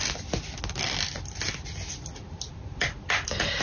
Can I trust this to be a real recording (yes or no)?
yes